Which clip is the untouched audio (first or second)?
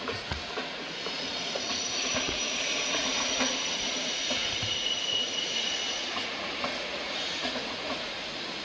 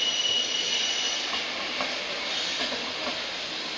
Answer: second